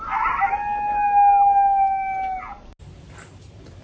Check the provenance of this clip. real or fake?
real